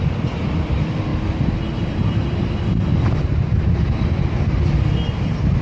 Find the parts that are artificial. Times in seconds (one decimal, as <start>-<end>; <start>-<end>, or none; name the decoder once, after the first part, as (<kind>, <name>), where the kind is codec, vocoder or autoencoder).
0.0-5.6 (vocoder, BigVGAN v2)